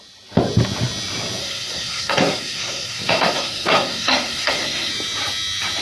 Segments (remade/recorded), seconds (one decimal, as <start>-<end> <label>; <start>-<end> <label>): 0.0-1.4 recorded; 1.4-4.9 remade; 4.9-5.8 recorded